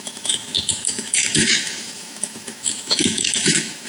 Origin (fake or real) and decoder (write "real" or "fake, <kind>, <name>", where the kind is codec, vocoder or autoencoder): fake, autoencoder, DAC-VAE